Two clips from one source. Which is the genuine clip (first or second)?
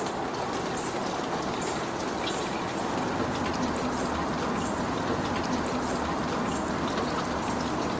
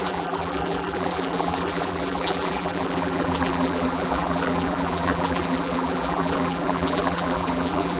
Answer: first